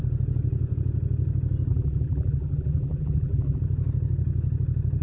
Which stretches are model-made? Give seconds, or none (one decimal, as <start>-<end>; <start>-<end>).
1.7-3.6